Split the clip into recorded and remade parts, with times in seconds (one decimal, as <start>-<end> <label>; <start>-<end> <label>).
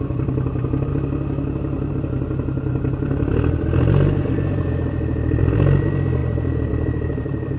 0.0-0.9 remade; 0.9-1.9 recorded; 1.9-7.6 remade